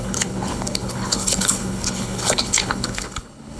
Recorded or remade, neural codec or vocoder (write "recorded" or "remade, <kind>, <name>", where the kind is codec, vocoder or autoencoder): remade, codec, HILCodec